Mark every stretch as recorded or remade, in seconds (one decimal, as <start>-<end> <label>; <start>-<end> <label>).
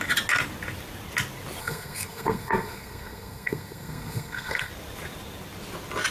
0.0-1.6 recorded; 1.6-4.7 remade; 4.7-6.1 recorded